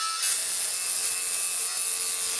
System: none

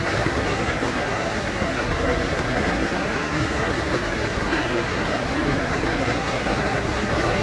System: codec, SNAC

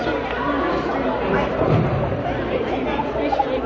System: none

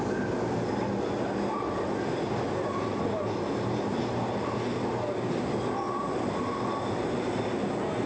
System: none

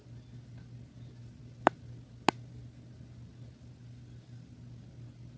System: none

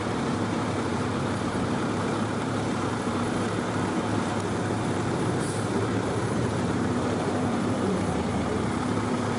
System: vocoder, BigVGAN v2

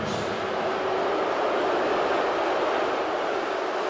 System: none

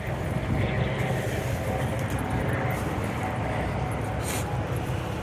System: none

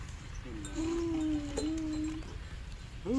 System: none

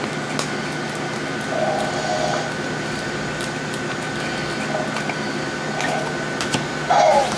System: none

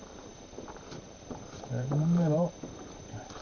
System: vocoder, BigVGAN v2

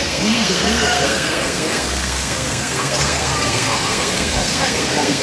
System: codec, SNAC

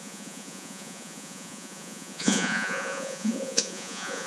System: vocoder, Vocos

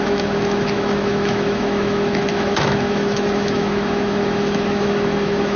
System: autoencoder, DAC-VAE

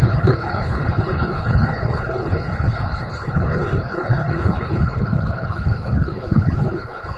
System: codec, HILCodec